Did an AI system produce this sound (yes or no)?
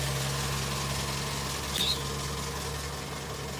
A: no